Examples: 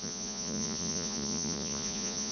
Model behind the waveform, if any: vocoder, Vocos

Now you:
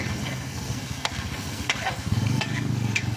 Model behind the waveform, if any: codec, SNAC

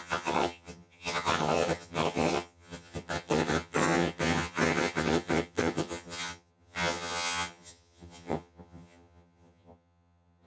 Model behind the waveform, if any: vocoder, HiFi-GAN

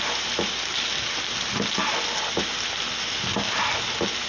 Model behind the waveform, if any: none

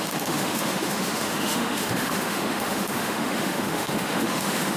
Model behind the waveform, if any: autoencoder, DAC-VAE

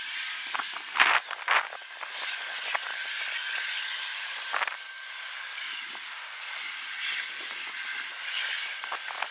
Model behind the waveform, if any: none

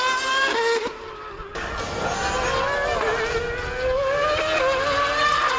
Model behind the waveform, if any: none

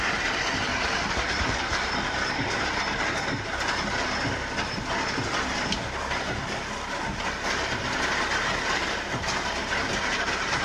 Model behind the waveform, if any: none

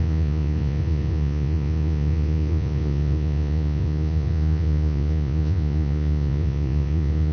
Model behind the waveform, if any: vocoder, Vocos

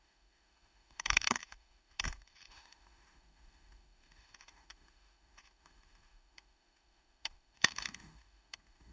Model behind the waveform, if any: autoencoder, DAC-VAE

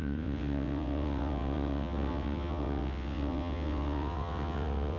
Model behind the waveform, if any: vocoder, WaveNeXt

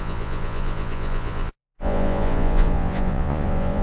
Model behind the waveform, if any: vocoder, Vocos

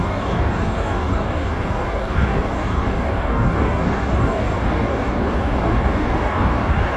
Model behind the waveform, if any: codec, DAC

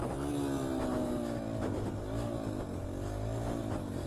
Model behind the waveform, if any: none